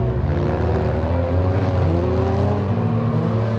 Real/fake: real